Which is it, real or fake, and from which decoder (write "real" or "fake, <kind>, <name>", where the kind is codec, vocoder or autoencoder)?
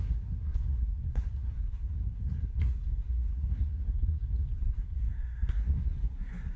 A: fake, codec, SNAC